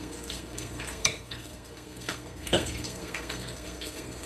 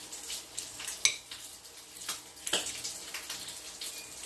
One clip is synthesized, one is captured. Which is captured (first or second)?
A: second